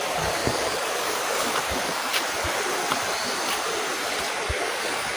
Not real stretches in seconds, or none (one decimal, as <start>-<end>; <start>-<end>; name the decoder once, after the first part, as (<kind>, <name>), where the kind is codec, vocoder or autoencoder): 0.0-2.1 (codec, DAC); 4.6-5.2